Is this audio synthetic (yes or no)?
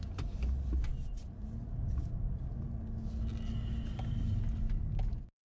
no